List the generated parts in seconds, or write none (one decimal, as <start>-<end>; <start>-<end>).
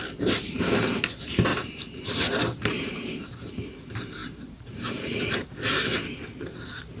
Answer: 1.5-3.5; 4.2-5.1